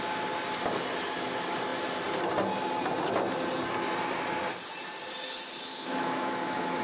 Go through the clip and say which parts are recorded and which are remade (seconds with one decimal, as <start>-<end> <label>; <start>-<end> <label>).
0.0-5.7 recorded; 5.7-6.8 remade